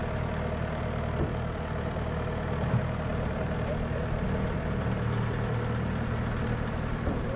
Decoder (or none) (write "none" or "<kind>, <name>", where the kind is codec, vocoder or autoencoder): none